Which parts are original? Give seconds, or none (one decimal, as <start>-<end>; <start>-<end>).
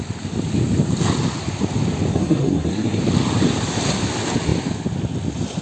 0.0-2.1; 3.0-5.6